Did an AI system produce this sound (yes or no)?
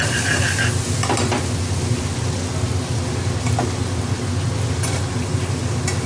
no